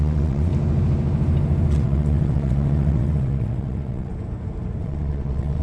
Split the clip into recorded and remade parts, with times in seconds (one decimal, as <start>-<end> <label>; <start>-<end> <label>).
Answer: 0.0-0.5 remade; 0.5-1.7 recorded; 1.7-4.1 remade; 4.1-4.8 recorded; 4.8-5.6 remade